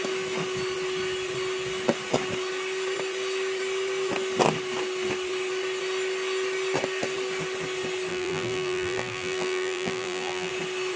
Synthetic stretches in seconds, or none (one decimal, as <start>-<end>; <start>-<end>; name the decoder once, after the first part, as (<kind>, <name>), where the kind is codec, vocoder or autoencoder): 8.1-10.5 (vocoder, BigVGAN v2)